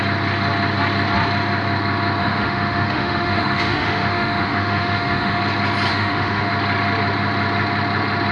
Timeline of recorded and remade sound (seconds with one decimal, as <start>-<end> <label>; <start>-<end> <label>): 0.0-2.2 recorded; 2.2-5.4 remade; 5.4-5.9 recorded; 5.9-6.5 remade; 6.5-8.3 recorded